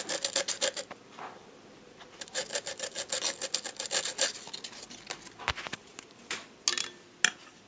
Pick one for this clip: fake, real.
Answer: real